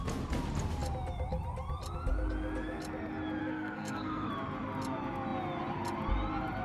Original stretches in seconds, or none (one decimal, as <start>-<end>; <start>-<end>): 0.0-3.4; 4.3-6.6